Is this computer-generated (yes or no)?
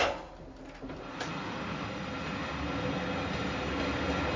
no